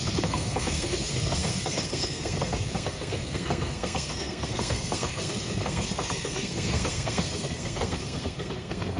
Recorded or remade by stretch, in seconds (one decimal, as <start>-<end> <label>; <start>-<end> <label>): 0.0-9.0 remade

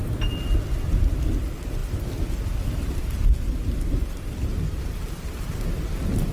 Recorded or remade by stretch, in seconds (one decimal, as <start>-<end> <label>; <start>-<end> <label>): 0.0-6.3 recorded

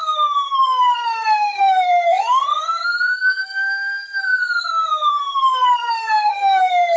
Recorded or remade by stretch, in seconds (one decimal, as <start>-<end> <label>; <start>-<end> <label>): 0.0-7.0 remade

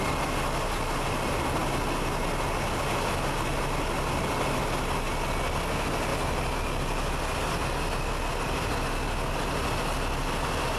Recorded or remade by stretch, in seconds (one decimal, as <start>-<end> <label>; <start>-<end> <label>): 0.0-10.8 recorded